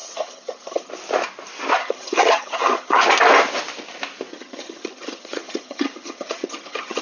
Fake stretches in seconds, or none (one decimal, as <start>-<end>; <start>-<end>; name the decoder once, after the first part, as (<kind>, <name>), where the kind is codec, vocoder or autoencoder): 0.0-0.9 (vocoder, HiFi-GAN); 1.8-3.0; 4.3-7.0